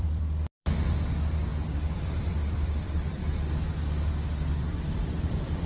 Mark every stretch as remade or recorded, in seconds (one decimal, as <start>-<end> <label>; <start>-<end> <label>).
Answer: 0.0-3.2 remade; 3.2-5.0 recorded; 5.0-5.7 remade